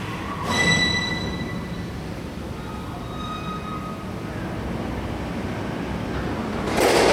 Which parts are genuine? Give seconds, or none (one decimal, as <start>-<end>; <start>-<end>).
0.0-7.1

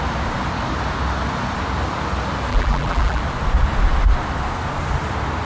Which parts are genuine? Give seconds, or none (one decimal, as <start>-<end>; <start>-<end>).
0.0-2.5; 3.2-5.4

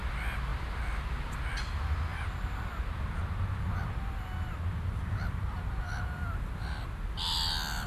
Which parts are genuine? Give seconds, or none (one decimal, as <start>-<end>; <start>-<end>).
0.0-2.1; 3.0-7.9

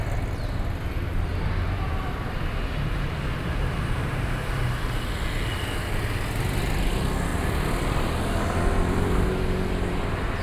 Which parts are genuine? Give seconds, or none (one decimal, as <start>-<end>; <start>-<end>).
0.0-1.3; 4.6-10.4

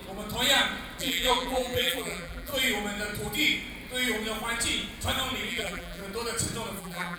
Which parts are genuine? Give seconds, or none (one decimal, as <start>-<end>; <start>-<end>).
0.0-1.0; 2.5-5.5; 6.0-6.8

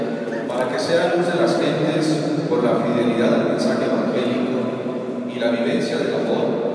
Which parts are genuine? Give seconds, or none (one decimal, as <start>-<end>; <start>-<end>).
2.9-3.8